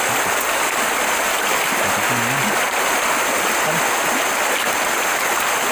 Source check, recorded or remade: recorded